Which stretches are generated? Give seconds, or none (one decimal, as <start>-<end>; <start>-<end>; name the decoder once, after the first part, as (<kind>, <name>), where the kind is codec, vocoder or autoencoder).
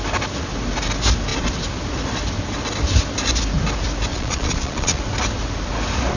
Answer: 4.1-5.0 (vocoder, Vocos)